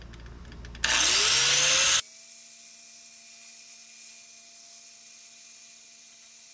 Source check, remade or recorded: recorded